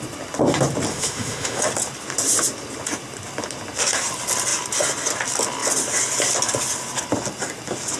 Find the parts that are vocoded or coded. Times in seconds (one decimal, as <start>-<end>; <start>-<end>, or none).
0.9-1.6